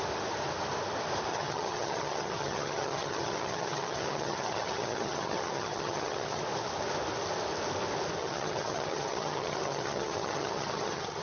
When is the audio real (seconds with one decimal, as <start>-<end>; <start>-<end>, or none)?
0.0-1.3; 6.4-8.2